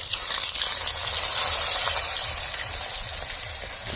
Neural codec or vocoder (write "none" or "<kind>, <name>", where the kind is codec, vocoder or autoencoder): none